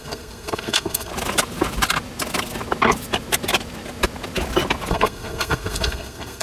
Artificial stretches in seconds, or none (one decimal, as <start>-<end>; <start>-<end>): 0.0-1.1; 4.9-6.4